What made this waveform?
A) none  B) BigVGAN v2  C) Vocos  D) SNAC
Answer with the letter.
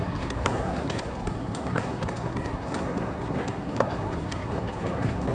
D